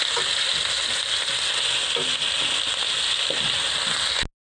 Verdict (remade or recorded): recorded